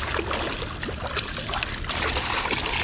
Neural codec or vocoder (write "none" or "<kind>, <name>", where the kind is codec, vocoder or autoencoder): none